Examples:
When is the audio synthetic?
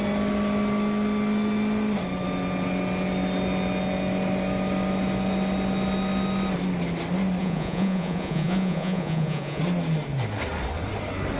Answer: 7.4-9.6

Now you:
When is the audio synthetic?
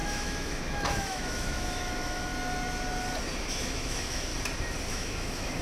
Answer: 0.0-2.3; 3.4-4.3; 4.9-5.6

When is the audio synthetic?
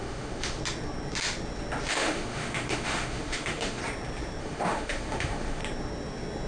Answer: 0.0-0.6; 1.9-3.8; 4.4-5.6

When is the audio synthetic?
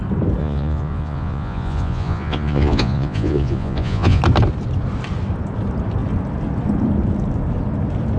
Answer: 0.4-4.2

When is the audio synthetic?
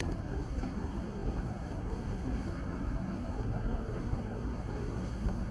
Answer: 0.0-5.5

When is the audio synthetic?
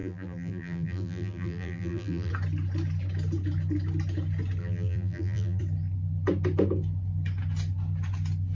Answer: 0.0-2.3; 4.6-5.6